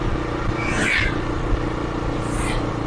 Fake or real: real